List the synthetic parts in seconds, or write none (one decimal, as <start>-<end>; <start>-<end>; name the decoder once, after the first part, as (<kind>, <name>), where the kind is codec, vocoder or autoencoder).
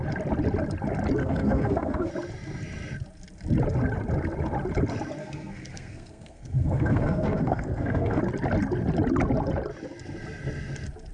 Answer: 1.2-2.1 (codec, SNAC); 5.2-8.2